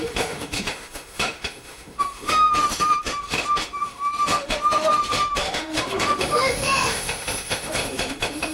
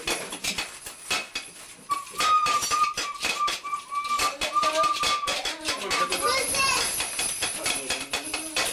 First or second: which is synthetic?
first